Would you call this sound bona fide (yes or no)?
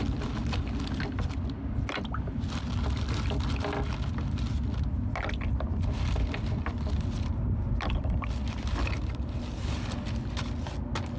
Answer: yes